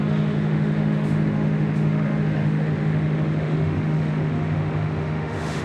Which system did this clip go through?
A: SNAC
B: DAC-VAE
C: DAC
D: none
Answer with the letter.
B